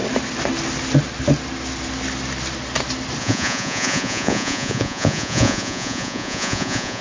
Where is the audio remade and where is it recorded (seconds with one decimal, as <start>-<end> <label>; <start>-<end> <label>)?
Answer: 0.0-3.2 recorded; 3.2-7.0 remade